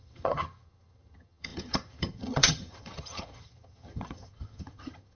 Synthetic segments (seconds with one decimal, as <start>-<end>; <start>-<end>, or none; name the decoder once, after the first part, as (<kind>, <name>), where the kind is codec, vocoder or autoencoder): 0.0-5.1 (vocoder, HiFi-GAN)